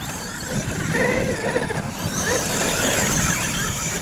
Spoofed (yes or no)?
yes